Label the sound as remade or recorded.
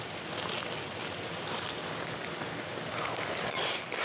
recorded